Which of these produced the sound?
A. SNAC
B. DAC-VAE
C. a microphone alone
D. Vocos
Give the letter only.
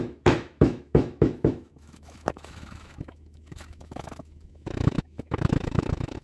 B